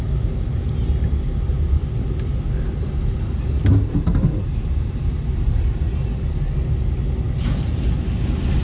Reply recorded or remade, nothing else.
recorded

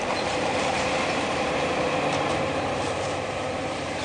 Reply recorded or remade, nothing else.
remade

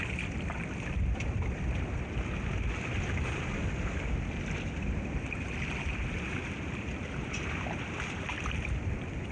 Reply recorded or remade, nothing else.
recorded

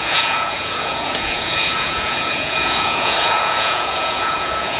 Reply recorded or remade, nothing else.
remade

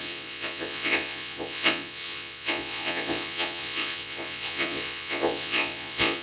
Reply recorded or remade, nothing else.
remade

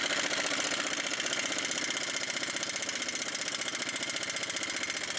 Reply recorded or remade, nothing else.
recorded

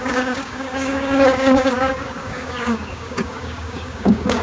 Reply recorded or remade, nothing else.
remade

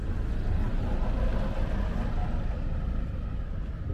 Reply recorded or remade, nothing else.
recorded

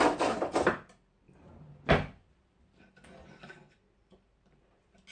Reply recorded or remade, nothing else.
recorded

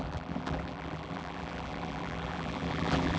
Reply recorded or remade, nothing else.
remade